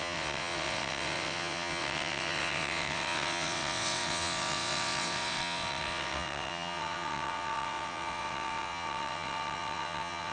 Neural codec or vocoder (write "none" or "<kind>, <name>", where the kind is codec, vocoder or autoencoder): vocoder, WaveNeXt